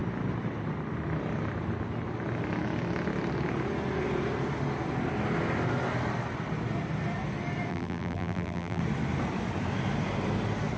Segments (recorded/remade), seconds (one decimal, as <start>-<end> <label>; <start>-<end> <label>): 0.0-7.7 recorded; 7.7-8.8 remade; 8.8-10.8 recorded